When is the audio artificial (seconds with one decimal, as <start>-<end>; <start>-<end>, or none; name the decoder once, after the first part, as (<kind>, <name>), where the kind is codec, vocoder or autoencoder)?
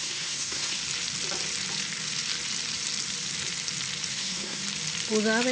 0.0-0.8 (codec, SNAC); 4.1-4.6